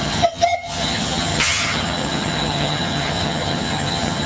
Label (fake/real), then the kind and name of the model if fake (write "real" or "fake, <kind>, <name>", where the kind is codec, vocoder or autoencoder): fake, vocoder, HiFi-GAN